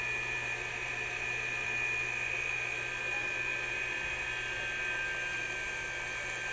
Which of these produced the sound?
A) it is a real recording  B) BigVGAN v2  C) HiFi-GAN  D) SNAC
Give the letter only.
A